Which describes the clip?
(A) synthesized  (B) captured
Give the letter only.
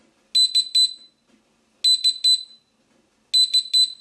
B